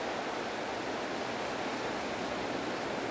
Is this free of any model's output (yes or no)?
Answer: yes